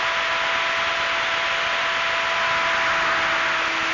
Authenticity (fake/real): real